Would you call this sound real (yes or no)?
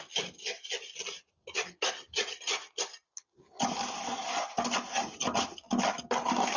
yes